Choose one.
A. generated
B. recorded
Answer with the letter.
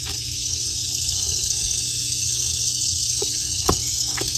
A